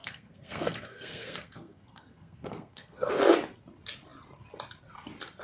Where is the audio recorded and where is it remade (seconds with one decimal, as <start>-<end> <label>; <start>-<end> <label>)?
0.0-3.1 remade; 3.1-5.4 recorded